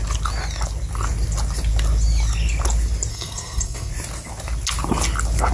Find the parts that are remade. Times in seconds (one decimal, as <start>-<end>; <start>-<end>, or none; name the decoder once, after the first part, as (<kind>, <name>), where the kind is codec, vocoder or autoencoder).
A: 3.1-3.9 (codec, SNAC)